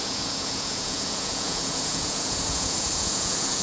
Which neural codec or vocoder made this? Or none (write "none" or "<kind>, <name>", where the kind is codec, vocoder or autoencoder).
vocoder, Vocos